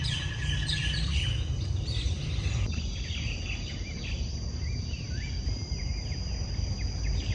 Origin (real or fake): real